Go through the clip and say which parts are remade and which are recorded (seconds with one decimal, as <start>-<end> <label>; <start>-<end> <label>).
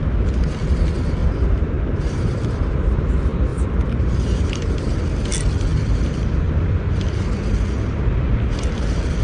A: 0.0-1.2 recorded; 1.2-3.0 remade; 3.0-3.5 recorded; 3.5-5.0 remade; 5.0-9.2 recorded